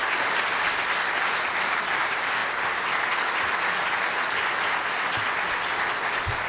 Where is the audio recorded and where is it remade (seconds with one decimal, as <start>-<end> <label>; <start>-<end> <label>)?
0.0-6.5 recorded